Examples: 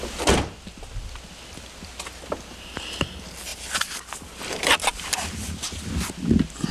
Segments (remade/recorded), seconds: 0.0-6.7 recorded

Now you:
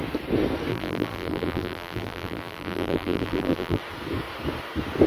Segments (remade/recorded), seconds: 0.0-0.7 recorded; 0.7-3.8 remade; 3.8-5.1 recorded

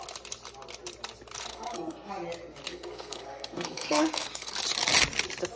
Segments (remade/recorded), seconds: 0.0-1.5 recorded; 1.5-2.1 remade; 2.1-2.7 recorded; 2.7-4.5 remade; 4.5-5.6 recorded

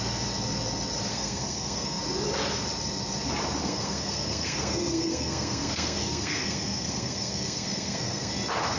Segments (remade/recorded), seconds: 0.0-1.1 recorded; 1.1-2.0 remade; 2.0-3.6 recorded; 3.6-8.3 remade; 8.3-8.8 recorded

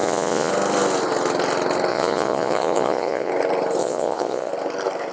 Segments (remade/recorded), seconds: 0.0-0.5 remade; 0.5-1.9 recorded; 1.9-3.3 remade; 3.3-3.8 recorded; 3.8-4.5 remade; 4.5-5.1 recorded

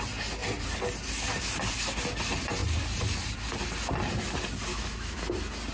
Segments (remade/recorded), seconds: 0.0-4.7 recorded; 4.7-5.2 remade; 5.2-5.7 recorded

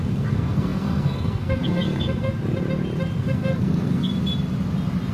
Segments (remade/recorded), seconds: 0.0-2.3 remade; 2.3-3.2 recorded; 3.2-4.1 remade; 4.1-5.1 recorded

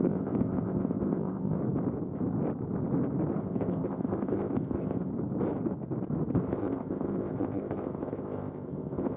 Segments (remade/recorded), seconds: 0.0-1.6 remade; 1.6-3.4 recorded; 3.4-5.1 remade; 5.1-6.3 recorded; 6.3-9.2 remade